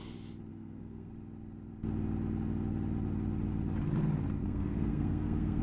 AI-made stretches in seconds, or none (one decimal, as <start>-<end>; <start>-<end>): 0.5-1.1; 4.4-5.6